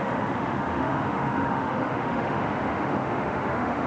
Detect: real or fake fake